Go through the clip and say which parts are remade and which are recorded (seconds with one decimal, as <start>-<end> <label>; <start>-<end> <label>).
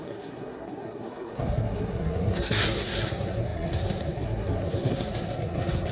0.0-5.9 remade